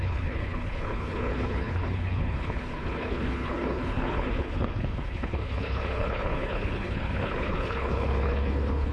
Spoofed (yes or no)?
yes